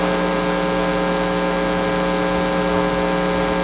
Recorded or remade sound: recorded